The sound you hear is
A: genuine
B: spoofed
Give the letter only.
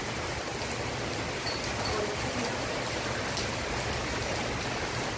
A